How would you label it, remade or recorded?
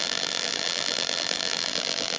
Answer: remade